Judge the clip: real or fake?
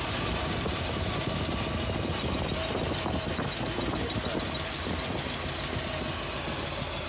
real